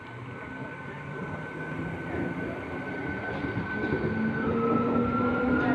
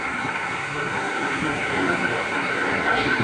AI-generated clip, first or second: second